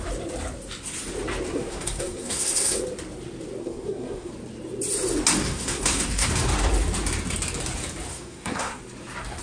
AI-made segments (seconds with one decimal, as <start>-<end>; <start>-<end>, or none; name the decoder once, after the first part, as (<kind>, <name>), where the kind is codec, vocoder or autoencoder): 1.5-2.8 (codec, SNAC); 3.6-4.3; 5.4-6.3; 8.1-8.8